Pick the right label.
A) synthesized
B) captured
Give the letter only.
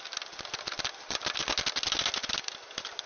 B